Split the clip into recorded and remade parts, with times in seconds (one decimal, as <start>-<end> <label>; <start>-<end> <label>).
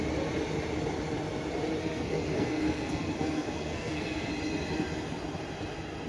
0.0-1.8 recorded; 1.8-4.3 remade; 4.3-6.1 recorded